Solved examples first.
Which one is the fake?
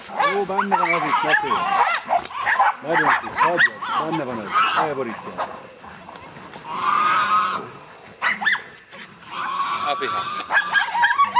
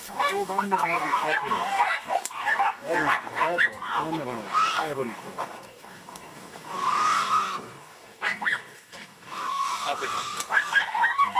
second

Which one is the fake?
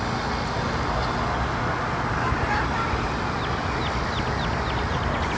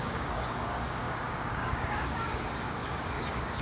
second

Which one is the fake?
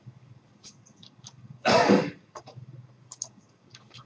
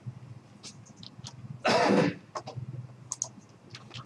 first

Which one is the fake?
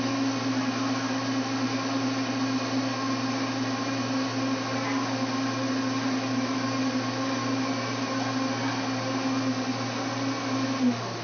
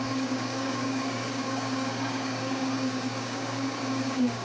second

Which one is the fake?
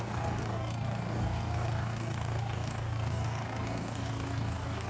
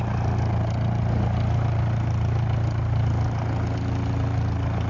first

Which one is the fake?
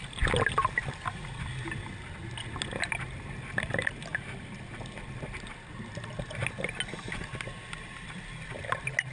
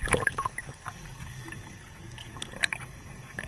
second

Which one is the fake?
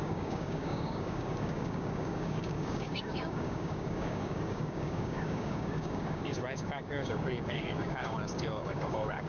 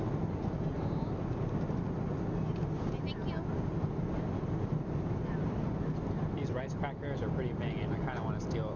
first